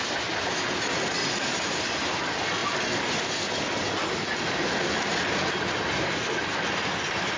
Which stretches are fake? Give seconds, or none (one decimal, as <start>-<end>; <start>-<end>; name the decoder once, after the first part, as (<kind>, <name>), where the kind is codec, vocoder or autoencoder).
none

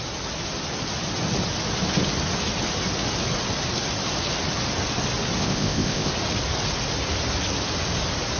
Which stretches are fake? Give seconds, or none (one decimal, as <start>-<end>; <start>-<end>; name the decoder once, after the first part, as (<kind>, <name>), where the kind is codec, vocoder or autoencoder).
5.4-6.1 (codec, ZipCodec)

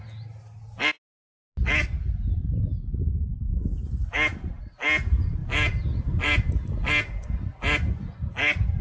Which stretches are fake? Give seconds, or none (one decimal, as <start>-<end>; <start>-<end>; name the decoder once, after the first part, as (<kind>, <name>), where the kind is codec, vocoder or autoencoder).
none

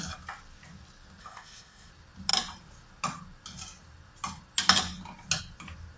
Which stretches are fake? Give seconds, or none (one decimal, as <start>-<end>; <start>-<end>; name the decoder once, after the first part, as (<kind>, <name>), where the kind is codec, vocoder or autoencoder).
1.2-1.9 (codec, ZipCodec)